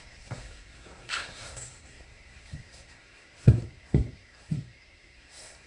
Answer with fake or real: fake